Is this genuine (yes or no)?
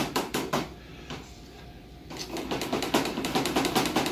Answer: yes